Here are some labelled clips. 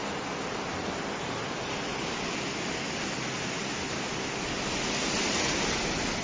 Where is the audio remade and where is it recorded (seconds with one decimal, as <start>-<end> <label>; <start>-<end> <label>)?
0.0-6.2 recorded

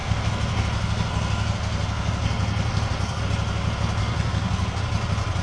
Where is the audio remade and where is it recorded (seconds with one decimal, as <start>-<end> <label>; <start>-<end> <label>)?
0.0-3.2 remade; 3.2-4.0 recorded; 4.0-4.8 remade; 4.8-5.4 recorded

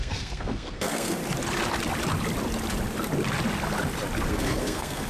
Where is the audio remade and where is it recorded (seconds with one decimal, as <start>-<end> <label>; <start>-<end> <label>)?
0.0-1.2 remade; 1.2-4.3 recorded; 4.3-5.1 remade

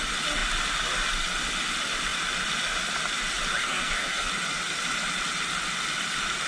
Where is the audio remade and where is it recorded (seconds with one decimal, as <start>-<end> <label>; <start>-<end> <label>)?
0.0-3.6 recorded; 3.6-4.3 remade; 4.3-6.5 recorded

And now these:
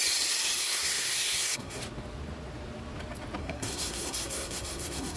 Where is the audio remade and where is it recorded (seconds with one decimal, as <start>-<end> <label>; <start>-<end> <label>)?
0.0-0.6 recorded; 0.6-1.8 remade; 1.8-3.4 recorded; 3.4-5.2 remade